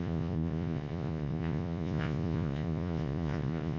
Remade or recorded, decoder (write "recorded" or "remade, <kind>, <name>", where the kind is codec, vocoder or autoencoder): remade, vocoder, Vocos